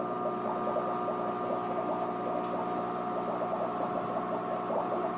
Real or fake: real